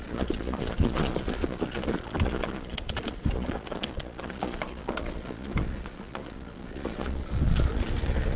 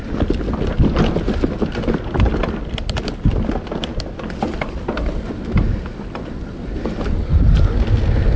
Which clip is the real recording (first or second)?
second